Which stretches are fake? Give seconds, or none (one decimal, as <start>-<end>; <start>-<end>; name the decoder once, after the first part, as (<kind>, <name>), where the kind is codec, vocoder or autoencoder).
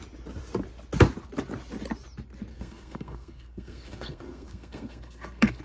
2.5-5.6 (codec, SNAC)